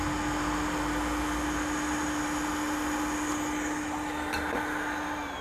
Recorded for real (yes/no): yes